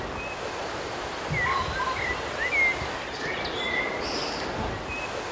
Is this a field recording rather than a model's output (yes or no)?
yes